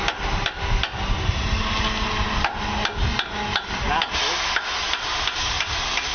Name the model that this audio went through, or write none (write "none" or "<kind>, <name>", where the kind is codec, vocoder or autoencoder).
none